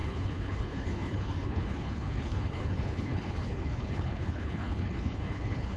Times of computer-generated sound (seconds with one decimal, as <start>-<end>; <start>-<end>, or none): 0.0-5.8